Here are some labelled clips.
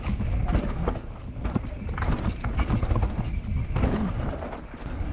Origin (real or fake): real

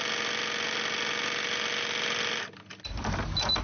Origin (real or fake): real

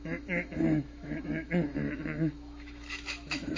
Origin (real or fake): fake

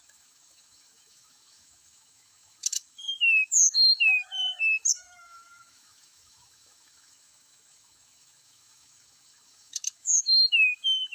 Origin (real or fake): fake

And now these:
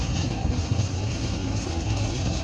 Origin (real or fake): fake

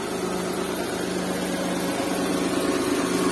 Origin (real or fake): real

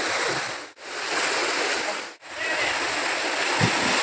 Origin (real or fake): real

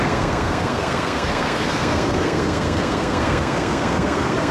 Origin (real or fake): fake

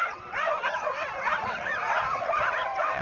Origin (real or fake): fake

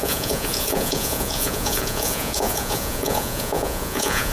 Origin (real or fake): fake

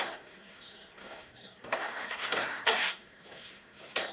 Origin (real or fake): fake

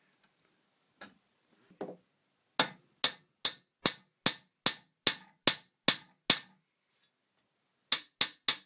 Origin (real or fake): real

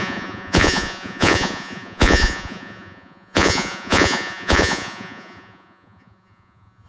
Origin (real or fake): fake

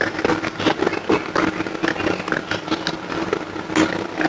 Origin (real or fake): real